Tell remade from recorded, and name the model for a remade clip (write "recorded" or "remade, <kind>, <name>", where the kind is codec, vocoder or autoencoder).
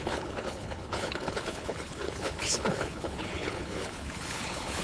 remade, codec, HILCodec